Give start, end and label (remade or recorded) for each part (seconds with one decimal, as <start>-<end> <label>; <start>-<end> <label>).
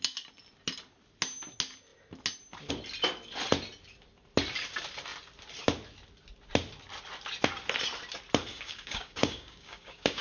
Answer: 0.0-8.5 recorded; 8.5-10.2 remade